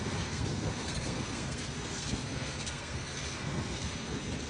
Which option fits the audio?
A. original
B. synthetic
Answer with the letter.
B